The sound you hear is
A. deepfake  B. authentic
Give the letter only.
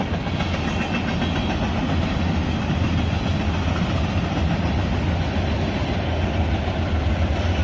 B